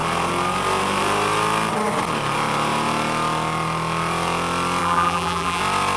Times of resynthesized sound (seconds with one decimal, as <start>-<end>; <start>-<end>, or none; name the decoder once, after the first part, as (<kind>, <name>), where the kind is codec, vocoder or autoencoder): 4.8-5.6 (vocoder, BigVGAN v2)